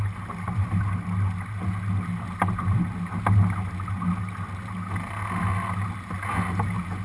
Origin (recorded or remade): recorded